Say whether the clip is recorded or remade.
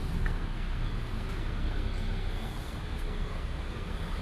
remade